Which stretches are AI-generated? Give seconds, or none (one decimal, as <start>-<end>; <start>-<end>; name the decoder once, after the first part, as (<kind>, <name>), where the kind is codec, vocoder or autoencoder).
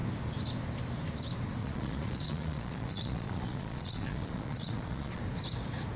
1.6-5.2 (vocoder, Vocos)